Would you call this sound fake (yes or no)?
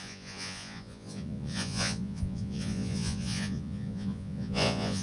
yes